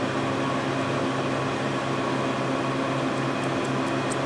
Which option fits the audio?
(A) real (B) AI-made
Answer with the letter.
A